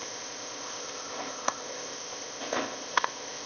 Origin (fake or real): fake